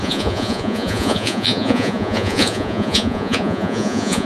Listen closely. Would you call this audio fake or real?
fake